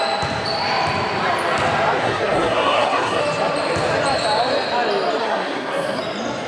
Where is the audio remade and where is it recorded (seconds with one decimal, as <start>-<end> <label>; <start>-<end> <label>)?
0.0-2.0 recorded; 2.0-3.2 remade; 3.2-5.2 recorded; 5.2-6.0 remade; 6.0-6.5 recorded